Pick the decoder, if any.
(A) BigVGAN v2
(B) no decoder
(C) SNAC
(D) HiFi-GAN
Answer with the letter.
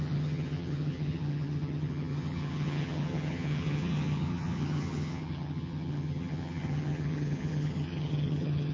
D